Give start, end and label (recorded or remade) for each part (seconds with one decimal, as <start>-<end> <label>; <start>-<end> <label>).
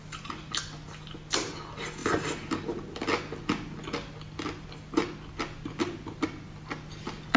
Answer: 0.0-7.4 recorded